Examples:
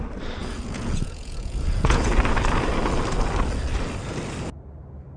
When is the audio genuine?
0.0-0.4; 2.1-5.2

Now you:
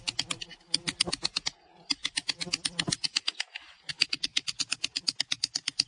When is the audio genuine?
0.0-5.9

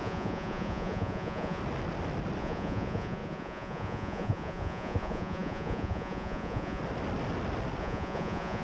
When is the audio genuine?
1.6-2.4; 6.8-7.8

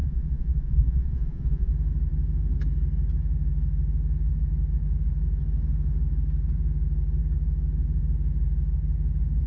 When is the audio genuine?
1.7-9.5

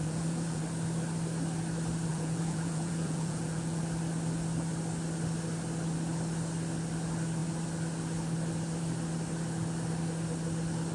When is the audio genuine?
0.6-2.1; 3.8-10.9

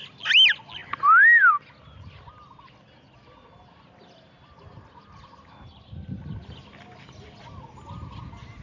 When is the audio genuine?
0.0-8.6

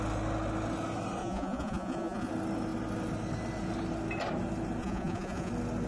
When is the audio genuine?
0.0-1.2; 2.3-4.8; 5.5-5.9

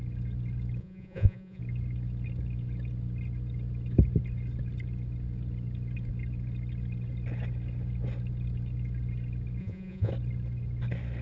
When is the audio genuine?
0.0-0.8; 1.6-9.6; 10.1-11.2